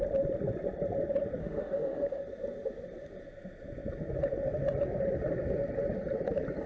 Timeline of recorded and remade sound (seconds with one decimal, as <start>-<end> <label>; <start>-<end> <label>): 0.0-1.4 recorded; 1.4-2.2 remade; 2.2-6.7 recorded

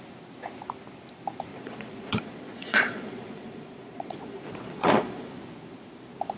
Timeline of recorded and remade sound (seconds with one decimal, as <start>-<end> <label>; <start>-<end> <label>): 0.0-1.5 recorded; 1.5-5.3 remade; 5.3-6.4 recorded

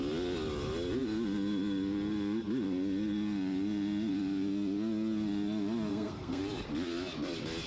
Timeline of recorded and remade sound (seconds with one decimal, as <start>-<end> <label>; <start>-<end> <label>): 0.0-5.9 recorded; 5.9-6.4 remade; 6.4-7.7 recorded

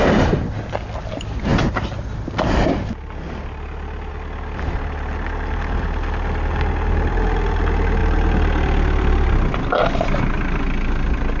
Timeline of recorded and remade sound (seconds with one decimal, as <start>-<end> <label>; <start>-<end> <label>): 0.0-8.0 recorded; 8.0-10.3 remade; 10.3-11.4 recorded

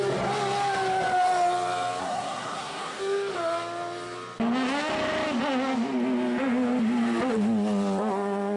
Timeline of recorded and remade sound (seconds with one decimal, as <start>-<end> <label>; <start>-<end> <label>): 0.0-2.0 recorded; 2.0-3.0 remade; 3.0-8.6 recorded

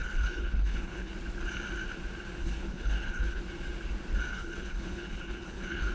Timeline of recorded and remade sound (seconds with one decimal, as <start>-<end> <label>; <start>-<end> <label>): 0.0-1.1 remade; 1.1-2.4 recorded; 2.4-3.4 remade; 3.4-4.3 recorded; 4.3-5.9 remade